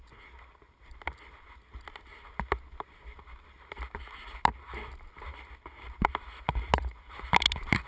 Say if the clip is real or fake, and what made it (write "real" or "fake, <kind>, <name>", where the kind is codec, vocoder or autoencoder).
real